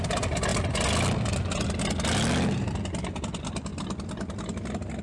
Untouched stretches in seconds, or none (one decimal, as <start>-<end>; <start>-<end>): 0.0-5.0